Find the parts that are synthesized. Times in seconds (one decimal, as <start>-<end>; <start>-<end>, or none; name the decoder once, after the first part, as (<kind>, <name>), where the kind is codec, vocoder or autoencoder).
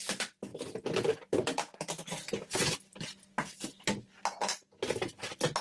none